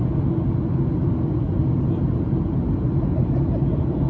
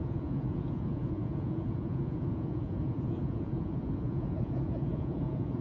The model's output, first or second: second